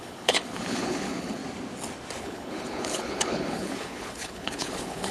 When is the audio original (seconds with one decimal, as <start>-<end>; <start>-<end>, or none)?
1.4-2.2